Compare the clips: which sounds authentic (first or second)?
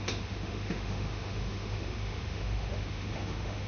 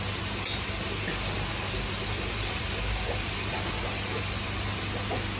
second